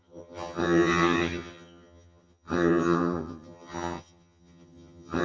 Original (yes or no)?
no